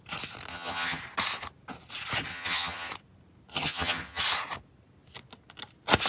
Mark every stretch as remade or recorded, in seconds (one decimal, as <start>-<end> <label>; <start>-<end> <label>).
0.0-0.5 recorded; 0.5-1.0 remade; 1.0-2.3 recorded; 2.3-2.9 remade; 2.9-3.5 recorded; 3.5-4.2 remade; 4.2-6.1 recorded